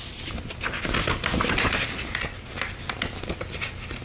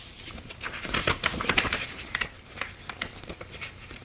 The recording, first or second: first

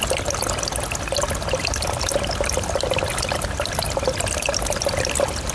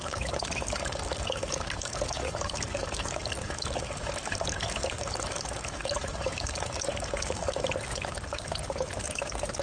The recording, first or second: first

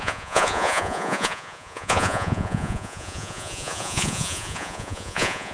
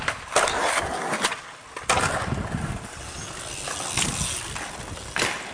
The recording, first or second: second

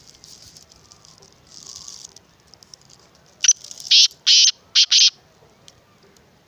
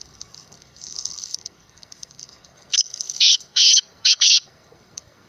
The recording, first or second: first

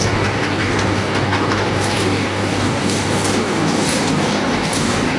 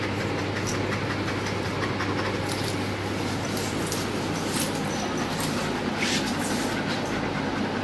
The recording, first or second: second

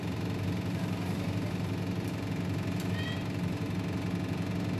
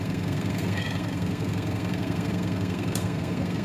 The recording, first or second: first